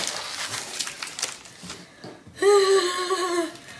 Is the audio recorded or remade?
recorded